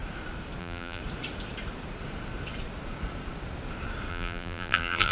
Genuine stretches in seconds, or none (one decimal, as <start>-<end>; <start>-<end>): 0.0-0.6; 1.0-4.1